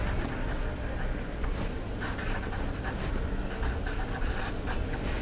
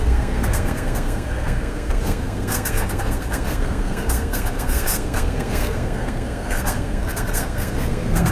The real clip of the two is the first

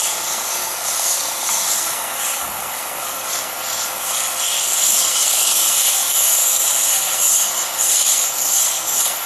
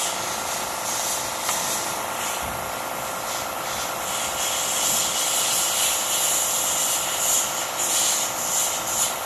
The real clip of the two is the second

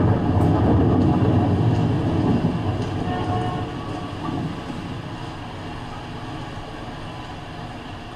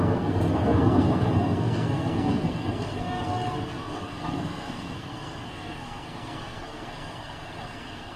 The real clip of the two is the first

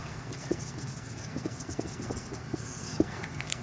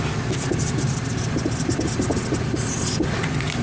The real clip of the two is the second